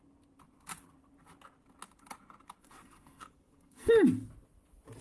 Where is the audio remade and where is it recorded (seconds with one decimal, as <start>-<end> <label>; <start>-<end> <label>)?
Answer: 0.0-2.6 recorded; 2.6-3.9 remade; 3.9-5.0 recorded